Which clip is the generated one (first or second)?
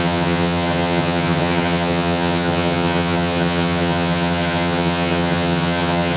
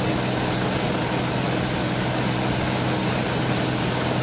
first